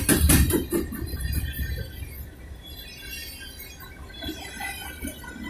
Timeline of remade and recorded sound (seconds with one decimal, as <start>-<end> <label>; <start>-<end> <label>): 0.0-5.5 recorded